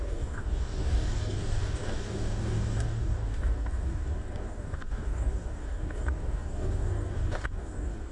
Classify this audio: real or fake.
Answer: fake